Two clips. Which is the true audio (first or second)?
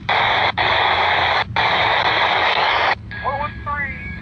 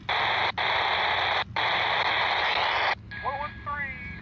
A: second